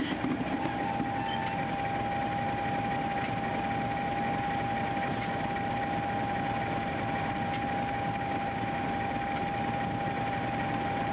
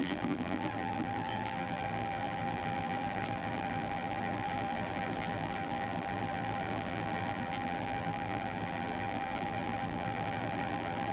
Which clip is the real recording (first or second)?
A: first